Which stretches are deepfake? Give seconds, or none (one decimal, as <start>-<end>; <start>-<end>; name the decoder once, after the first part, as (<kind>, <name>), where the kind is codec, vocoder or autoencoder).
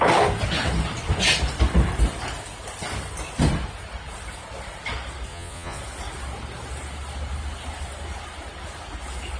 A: 5.3-5.8 (vocoder, Vocos)